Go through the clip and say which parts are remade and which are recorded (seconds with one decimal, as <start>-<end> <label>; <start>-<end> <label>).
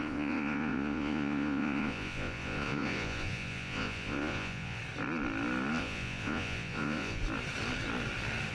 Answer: 0.0-4.8 remade; 4.8-5.8 recorded; 5.8-7.2 remade; 7.2-8.5 recorded